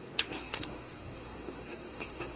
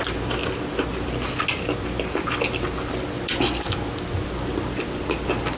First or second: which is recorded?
second